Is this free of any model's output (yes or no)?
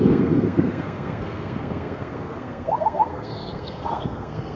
no